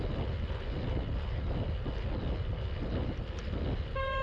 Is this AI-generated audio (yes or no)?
no